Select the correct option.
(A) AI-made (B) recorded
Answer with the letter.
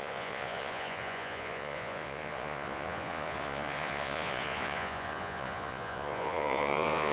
A